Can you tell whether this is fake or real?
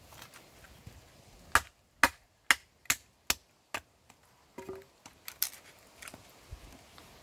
real